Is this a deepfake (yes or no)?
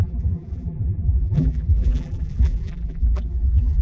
yes